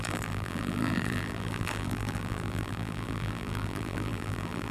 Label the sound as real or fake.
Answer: fake